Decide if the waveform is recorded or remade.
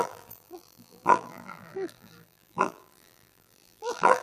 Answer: remade